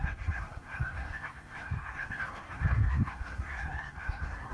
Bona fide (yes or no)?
no